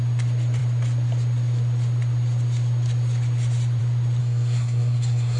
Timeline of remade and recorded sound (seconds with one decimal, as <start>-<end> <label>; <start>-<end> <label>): 0.0-4.2 recorded; 4.2-5.4 remade